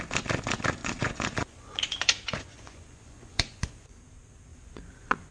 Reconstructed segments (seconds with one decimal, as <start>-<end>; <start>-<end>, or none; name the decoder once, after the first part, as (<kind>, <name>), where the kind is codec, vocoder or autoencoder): 0.8-4.0 (vocoder, Vocos); 4.5-5.3